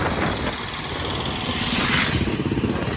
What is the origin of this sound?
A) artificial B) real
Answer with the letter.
B